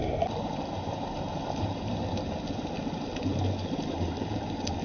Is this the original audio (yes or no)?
yes